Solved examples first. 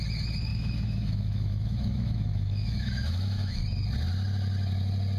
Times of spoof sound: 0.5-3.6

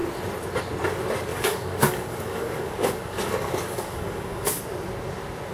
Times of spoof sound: 1.3-4.6

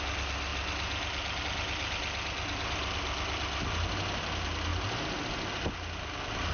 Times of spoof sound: none